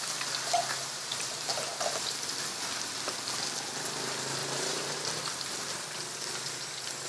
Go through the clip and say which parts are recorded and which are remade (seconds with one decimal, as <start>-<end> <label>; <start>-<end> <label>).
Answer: 0.0-0.8 recorded; 0.8-1.6 remade; 1.6-4.4 recorded; 4.4-5.2 remade; 5.2-7.1 recorded